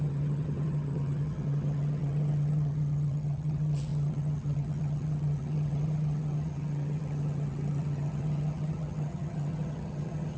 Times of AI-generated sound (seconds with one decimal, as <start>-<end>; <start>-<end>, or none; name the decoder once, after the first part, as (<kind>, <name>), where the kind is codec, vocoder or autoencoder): 0.0-10.4 (vocoder, HiFi-GAN)